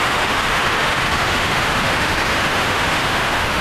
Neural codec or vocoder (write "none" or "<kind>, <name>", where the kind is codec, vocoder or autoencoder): autoencoder, DAC-VAE